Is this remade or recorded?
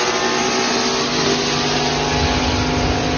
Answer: recorded